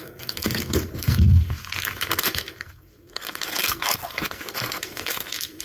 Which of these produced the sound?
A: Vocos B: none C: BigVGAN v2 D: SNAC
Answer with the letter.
D